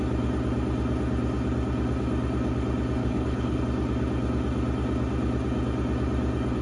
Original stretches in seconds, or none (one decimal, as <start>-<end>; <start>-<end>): 0.0-3.0; 3.6-6.6